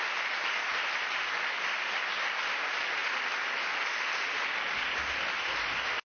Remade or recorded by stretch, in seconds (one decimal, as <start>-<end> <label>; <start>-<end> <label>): 0.0-6.2 recorded